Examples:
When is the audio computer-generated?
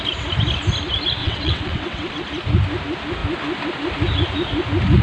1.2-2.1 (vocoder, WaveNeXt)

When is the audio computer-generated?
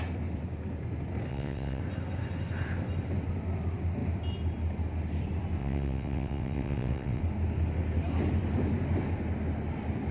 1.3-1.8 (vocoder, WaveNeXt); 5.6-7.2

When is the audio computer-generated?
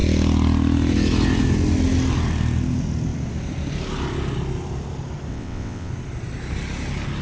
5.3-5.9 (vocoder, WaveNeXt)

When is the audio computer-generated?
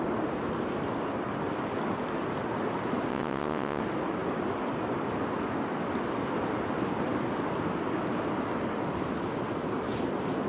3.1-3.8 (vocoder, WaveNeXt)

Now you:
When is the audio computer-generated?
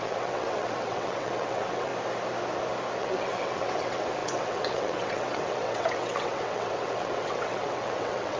0.0-1.9 (vocoder, WaveNeXt); 3.0-8.4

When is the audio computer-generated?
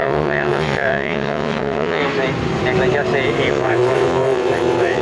0.0-2.0 (vocoder, WaveNeXt); 3.5-5.0